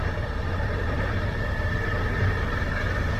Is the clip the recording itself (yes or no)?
no